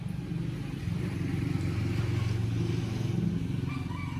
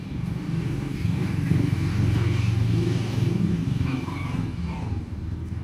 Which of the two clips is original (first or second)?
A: first